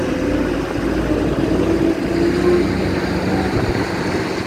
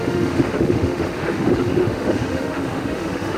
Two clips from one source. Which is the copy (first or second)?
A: second